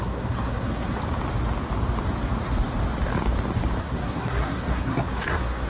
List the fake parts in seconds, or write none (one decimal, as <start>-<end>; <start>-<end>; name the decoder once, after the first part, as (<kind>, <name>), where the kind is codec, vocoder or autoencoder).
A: 0.0-1.0 (codec, SNAC); 3.8-5.7

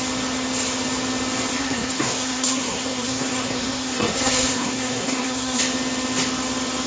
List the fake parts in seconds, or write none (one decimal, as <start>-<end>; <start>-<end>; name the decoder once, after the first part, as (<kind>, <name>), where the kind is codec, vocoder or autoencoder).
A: 1.5-5.6 (codec, SNAC)

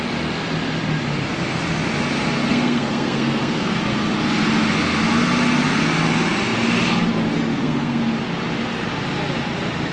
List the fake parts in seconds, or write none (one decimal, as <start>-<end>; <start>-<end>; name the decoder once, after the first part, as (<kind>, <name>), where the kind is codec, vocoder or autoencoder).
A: 2.5-3.8 (codec, SNAC); 7.5-8.0

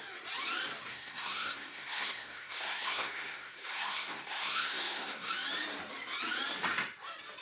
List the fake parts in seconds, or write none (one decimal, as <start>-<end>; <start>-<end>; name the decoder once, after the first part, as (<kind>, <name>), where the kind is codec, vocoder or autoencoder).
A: 0.9-5.3 (codec, SNAC)

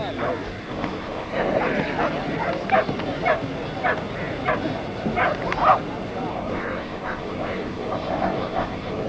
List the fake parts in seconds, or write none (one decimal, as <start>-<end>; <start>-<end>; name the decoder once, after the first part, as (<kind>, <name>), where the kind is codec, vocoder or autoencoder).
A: 0.6-1.6 (codec, SNAC); 6.3-9.1

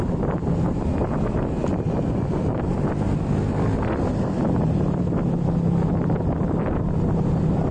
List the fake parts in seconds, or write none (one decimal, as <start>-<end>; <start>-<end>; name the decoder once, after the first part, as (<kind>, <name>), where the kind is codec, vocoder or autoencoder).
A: none

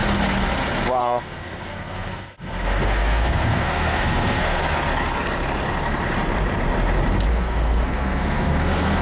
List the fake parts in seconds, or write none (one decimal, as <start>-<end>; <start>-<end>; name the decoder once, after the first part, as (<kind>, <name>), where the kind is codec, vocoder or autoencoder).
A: 1.0-4.6 (codec, SNAC); 7.3-9.0